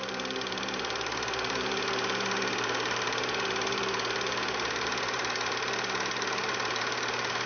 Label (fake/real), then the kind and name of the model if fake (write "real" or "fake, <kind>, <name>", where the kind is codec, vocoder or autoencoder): fake, vocoder, BigVGAN v2